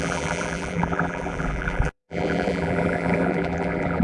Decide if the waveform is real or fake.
fake